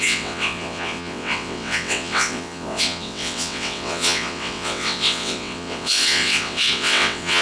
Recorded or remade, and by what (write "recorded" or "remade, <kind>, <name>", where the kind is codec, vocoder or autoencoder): remade, vocoder, WaveNeXt